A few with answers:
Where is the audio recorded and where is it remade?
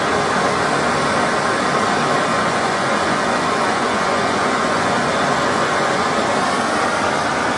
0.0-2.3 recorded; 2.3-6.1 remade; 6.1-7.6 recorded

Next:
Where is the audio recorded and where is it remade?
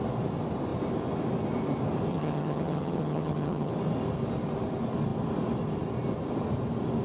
0.0-2.1 recorded; 2.1-3.7 remade; 3.7-7.0 recorded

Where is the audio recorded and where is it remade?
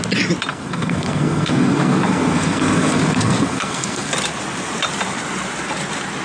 0.0-0.5 recorded; 0.5-4.1 remade; 4.1-6.2 recorded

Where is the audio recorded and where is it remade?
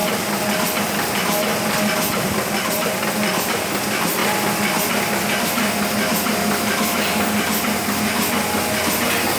0.0-9.4 recorded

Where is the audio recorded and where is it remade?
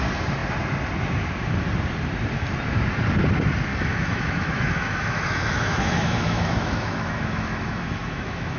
0.0-3.7 recorded; 3.7-8.6 remade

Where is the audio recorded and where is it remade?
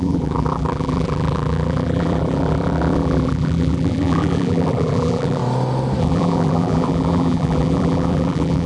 0.0-5.4 remade; 5.4-6.0 recorded; 6.0-8.7 remade